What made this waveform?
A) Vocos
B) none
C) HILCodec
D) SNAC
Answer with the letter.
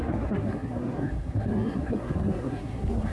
D